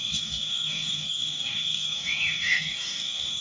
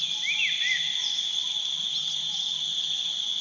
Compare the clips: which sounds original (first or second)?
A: second